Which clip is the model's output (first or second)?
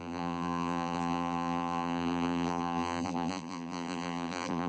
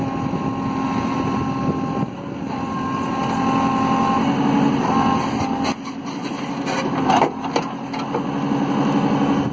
first